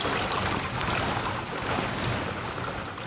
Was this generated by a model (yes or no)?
no